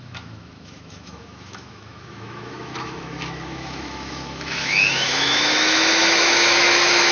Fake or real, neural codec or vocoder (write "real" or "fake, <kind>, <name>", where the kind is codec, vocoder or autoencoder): fake, autoencoder, DAC-VAE